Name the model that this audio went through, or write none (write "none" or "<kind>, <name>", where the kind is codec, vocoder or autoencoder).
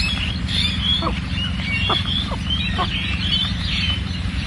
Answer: vocoder, BigVGAN v2